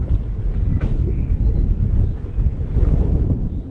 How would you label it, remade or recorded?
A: recorded